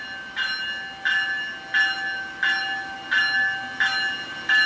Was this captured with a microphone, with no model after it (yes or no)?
yes